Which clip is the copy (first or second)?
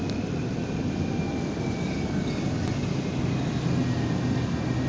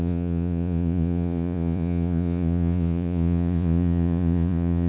second